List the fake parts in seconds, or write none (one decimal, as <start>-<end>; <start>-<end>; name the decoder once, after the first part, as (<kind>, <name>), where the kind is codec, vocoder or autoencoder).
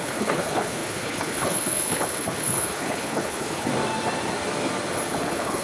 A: 0.0-3.7 (codec, HILCodec); 5.1-5.6